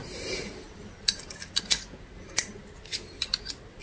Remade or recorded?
recorded